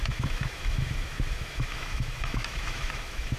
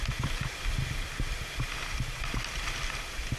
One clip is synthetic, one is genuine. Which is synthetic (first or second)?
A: first